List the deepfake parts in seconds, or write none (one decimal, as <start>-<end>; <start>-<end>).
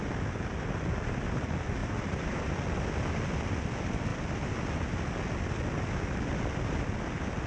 1.8-2.5